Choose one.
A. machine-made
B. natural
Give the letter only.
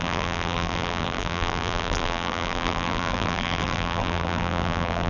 A